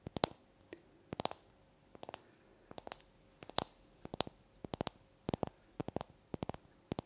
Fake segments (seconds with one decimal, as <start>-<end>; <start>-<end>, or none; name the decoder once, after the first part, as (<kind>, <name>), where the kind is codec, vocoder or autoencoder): none